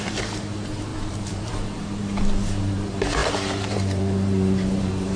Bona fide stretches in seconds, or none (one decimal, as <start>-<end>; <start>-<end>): none